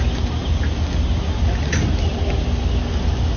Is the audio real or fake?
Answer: real